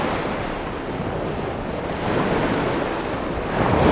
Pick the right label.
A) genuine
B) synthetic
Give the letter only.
A